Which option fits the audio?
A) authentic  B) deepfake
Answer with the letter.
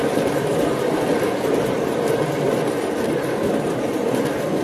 A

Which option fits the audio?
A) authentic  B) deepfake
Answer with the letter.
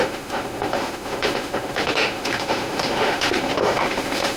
B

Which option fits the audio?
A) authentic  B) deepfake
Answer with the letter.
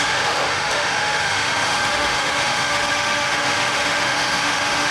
B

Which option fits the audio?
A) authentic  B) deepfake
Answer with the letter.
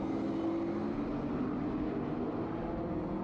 A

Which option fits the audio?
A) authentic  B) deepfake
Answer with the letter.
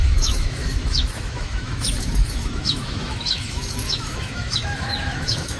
B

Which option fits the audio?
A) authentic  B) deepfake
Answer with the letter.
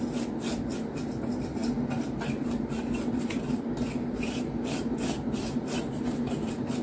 A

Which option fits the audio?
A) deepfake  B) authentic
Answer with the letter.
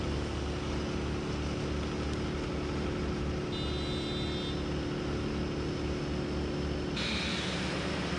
B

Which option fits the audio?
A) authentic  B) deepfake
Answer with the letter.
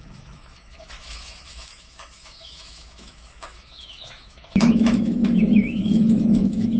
B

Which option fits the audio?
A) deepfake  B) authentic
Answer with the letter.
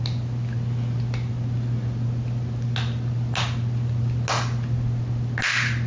B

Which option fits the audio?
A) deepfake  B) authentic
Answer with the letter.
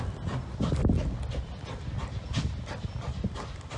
B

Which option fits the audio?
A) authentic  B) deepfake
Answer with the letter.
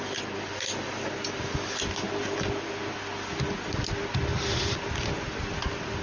A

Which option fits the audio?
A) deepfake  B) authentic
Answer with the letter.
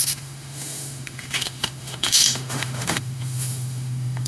A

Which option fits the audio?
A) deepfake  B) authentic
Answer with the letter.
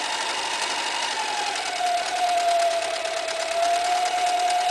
B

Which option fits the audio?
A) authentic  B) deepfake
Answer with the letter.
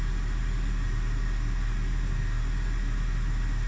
A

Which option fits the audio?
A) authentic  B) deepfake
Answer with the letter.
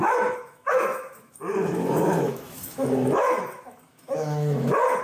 B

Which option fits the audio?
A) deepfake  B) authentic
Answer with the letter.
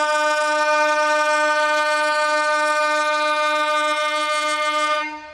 A